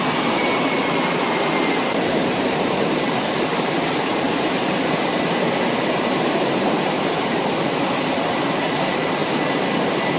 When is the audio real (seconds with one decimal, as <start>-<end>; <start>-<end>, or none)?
0.4-2.0; 9.2-10.2